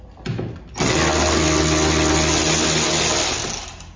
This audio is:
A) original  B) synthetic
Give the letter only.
A